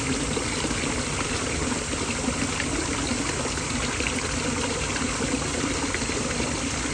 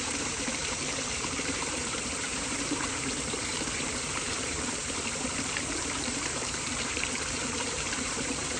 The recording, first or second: first